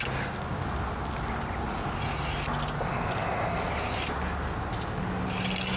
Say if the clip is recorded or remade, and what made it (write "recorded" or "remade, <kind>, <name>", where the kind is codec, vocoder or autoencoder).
recorded